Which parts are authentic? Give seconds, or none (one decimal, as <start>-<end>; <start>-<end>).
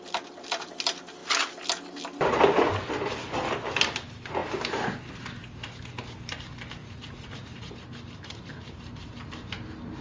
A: 0.0-6.8; 7.7-10.0